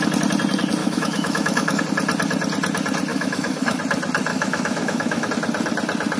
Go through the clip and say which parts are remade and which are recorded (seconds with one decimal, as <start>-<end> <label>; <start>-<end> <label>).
0.0-0.8 recorded; 0.8-1.8 remade; 1.8-3.1 recorded; 3.1-3.8 remade; 3.8-4.3 recorded; 4.3-5.3 remade; 5.3-6.2 recorded